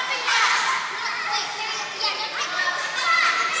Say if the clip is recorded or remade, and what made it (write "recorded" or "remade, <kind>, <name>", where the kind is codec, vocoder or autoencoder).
recorded